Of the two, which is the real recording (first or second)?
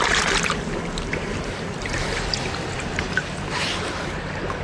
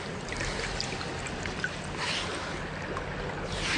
second